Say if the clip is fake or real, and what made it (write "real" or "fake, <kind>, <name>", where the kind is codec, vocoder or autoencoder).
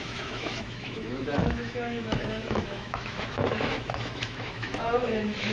fake, autoencoder, DAC-VAE